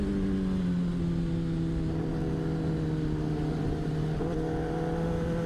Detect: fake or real real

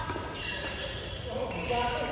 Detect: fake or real real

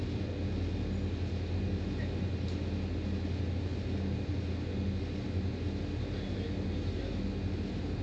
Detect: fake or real real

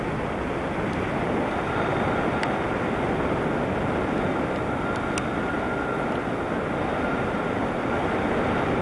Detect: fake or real real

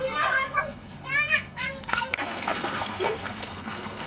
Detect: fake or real fake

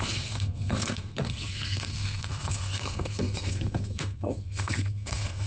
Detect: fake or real fake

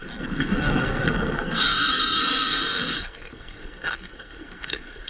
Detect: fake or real fake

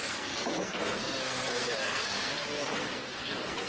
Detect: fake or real fake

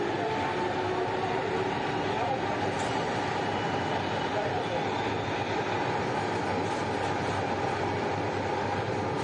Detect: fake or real real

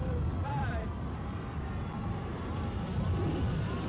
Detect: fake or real real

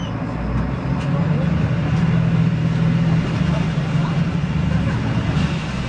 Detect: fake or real real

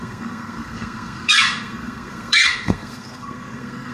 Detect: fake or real fake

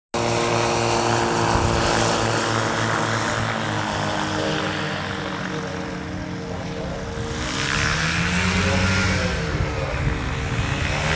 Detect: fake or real real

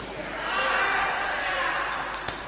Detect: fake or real real